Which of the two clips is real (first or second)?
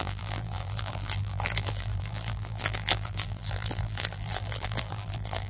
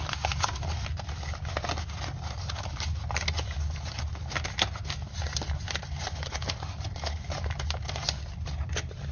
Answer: second